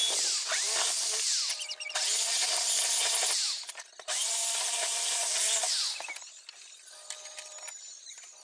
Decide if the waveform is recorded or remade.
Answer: recorded